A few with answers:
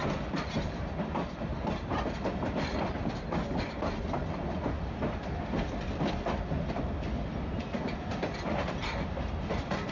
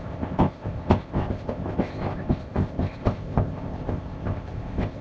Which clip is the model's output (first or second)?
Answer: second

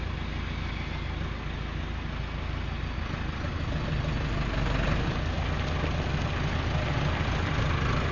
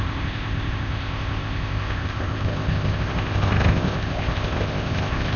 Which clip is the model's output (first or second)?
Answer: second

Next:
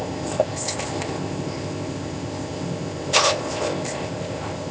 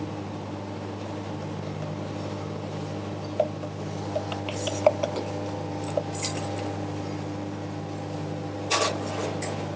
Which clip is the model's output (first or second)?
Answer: first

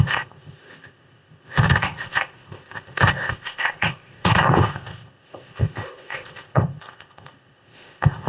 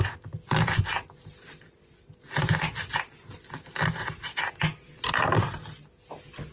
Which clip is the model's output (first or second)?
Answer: first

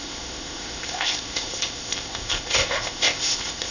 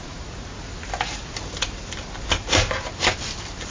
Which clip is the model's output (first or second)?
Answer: first